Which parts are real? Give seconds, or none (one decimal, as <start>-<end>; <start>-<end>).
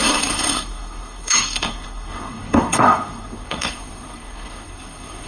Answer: none